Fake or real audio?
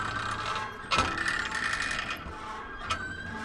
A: real